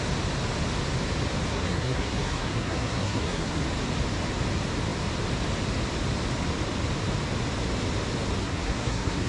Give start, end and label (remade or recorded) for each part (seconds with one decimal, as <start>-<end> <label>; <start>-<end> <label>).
0.0-1.5 recorded; 1.5-3.6 remade; 3.6-8.4 recorded; 8.4-9.3 remade